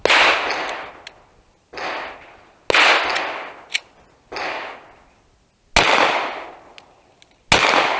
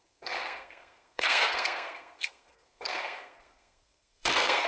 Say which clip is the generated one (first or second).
second